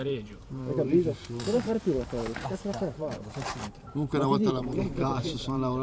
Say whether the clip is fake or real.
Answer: fake